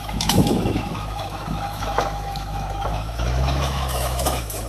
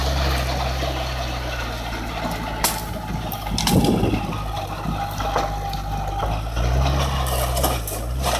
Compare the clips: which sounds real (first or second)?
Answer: second